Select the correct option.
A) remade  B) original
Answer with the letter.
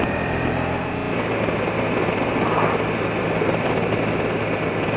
B